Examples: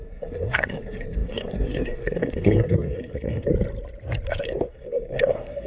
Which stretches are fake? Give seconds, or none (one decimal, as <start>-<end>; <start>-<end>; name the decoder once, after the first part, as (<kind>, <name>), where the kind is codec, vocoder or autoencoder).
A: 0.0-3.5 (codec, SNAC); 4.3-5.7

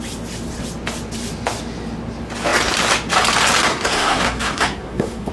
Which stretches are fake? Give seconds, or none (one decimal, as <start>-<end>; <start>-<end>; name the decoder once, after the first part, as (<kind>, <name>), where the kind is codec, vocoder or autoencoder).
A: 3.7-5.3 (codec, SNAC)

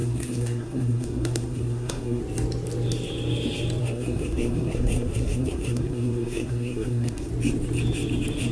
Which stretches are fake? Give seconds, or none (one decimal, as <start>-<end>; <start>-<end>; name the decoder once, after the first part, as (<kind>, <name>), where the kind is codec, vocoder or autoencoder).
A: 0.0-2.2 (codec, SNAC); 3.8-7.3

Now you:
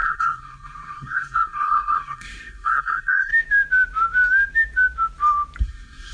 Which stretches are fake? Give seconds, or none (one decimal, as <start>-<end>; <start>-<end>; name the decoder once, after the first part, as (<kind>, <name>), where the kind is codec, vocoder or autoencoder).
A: 0.0-3.3 (codec, SNAC); 5.6-6.1

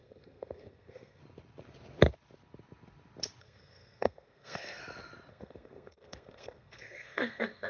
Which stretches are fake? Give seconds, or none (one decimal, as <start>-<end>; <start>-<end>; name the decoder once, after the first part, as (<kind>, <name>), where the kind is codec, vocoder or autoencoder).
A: 0.0-1.2 (codec, SNAC); 3.4-4.8; 5.3-7.7

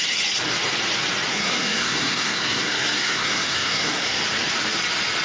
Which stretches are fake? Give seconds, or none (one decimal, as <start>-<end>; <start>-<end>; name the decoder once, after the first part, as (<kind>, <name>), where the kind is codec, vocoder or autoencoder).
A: 1.3-4.2 (codec, SNAC)

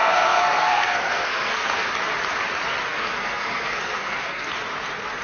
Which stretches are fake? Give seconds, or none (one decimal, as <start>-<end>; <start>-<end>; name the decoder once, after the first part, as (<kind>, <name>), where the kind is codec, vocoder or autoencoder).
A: 0.0-1.9 (codec, SNAC); 2.9-4.5